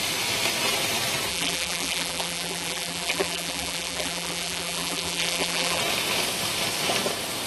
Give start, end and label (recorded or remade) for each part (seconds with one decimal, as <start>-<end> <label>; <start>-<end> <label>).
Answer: 0.0-1.3 recorded; 1.3-5.8 remade; 5.8-7.5 recorded